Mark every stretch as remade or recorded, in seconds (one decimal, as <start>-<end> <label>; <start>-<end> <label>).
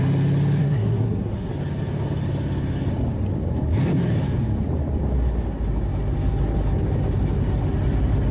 0.0-0.6 recorded; 0.6-1.5 remade; 1.5-8.3 recorded